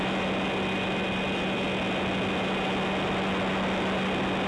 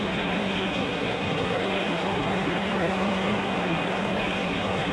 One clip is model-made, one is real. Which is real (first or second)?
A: first